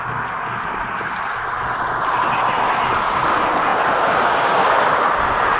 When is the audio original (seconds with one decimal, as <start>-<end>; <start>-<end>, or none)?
0.0-5.6